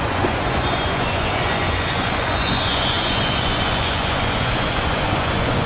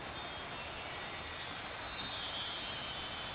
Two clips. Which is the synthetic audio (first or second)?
first